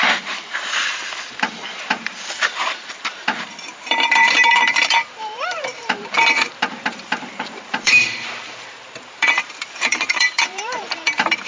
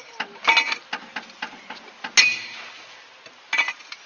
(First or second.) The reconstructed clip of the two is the first